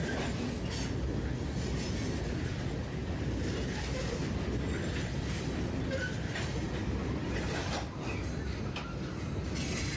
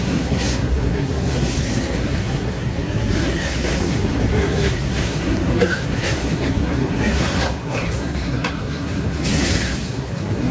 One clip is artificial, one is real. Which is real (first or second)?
first